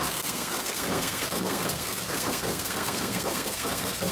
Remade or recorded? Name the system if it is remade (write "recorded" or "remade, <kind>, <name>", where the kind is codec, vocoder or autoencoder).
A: remade, codec, SNAC